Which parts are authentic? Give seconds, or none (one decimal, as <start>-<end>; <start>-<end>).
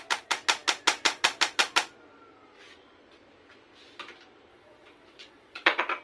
0.0-4.5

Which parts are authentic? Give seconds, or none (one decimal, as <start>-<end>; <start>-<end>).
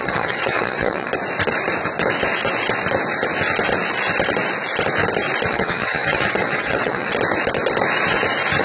1.1-5.5; 7.1-8.6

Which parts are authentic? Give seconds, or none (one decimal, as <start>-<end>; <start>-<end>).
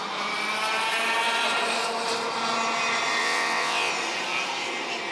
0.0-3.2; 3.9-5.1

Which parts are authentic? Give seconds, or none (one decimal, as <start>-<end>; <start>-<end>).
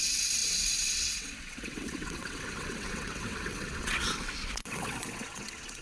none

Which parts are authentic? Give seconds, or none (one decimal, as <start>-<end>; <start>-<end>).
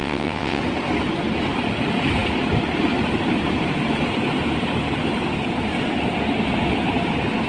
0.6-7.5